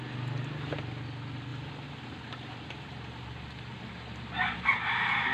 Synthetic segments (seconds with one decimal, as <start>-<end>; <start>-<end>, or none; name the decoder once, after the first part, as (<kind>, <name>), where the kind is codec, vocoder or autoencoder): none